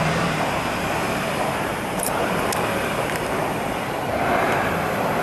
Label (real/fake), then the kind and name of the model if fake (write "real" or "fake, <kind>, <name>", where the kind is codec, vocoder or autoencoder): fake, vocoder, BigVGAN v2